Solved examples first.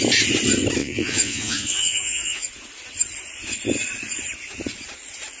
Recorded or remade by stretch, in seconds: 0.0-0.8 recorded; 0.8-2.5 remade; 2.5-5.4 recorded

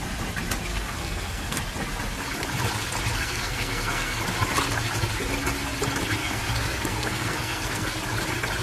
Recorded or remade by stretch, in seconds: 0.0-0.7 recorded; 0.7-1.6 remade; 1.6-3.1 recorded; 3.1-4.2 remade; 4.2-6.2 recorded; 6.2-7.9 remade; 7.9-8.6 recorded